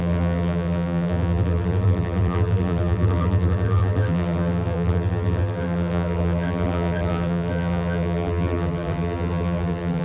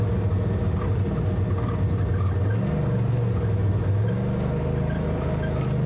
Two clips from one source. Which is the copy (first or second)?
first